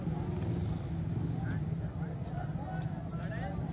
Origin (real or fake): real